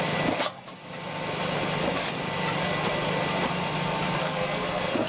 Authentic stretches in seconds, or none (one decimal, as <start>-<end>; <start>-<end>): 0.0-4.2